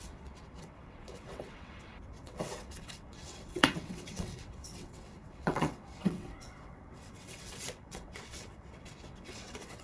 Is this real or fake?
fake